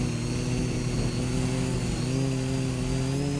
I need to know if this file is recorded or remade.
recorded